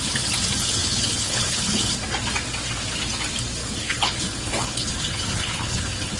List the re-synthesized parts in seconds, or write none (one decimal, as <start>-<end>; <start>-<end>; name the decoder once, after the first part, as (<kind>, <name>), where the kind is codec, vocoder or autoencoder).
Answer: 0.8-1.9 (codec, HILCodec); 3.6-6.2